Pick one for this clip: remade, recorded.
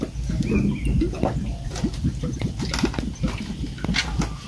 recorded